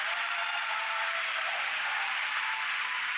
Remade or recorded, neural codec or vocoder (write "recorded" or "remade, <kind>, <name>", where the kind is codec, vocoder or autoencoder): remade, vocoder, BigVGAN v2